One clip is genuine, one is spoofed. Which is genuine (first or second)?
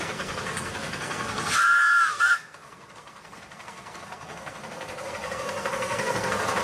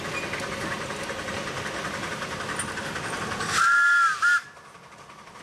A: second